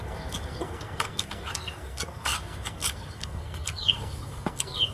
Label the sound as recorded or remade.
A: remade